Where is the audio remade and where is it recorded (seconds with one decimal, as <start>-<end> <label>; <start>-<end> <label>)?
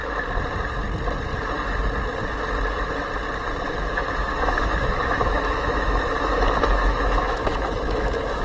0.0-3.6 recorded; 3.6-8.4 remade